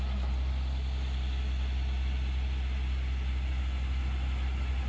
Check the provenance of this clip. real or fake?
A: real